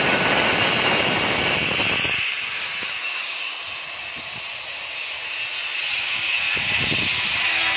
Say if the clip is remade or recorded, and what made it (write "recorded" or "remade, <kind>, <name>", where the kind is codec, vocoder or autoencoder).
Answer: recorded